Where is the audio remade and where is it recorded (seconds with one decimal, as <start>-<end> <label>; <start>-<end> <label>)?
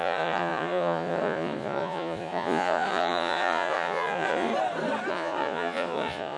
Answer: 0.0-4.5 remade; 4.5-5.1 recorded; 5.1-6.4 remade